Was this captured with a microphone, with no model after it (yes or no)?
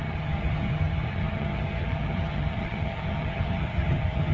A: no